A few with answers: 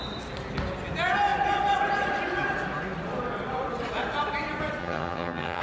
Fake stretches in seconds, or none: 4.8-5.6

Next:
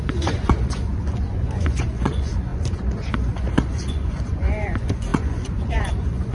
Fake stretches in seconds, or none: 0.0-6.3

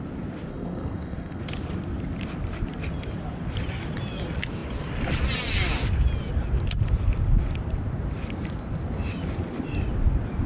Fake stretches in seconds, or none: 0.5-1.4

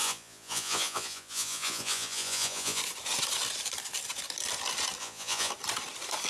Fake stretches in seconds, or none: 0.0-2.8; 5.0-5.5

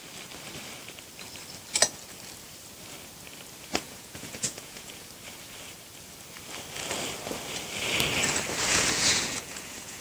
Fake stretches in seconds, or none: 3.7-5.1; 8.7-10.0